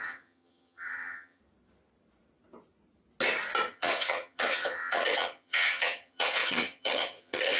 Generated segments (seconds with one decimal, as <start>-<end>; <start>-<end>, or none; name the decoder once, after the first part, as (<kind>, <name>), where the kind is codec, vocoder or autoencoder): 0.0-1.4 (vocoder, HiFi-GAN); 3.7-7.6